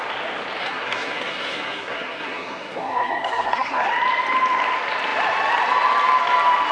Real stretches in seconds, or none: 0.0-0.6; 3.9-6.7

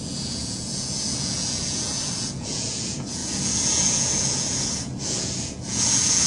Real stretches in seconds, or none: none

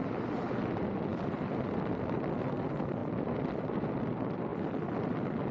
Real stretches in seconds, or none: 0.0-1.1; 2.4-3.0; 3.6-5.5

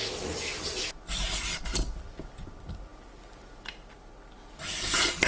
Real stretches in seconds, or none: 0.0-5.3

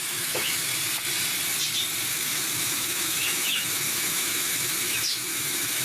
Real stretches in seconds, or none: 0.7-2.1

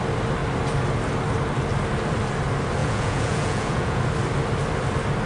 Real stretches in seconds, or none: 0.0-2.8; 4.0-5.3